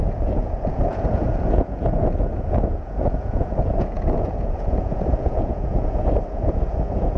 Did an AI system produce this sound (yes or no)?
yes